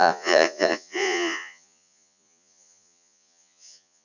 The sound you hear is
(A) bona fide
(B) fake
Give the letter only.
B